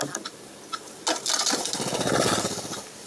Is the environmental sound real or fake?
real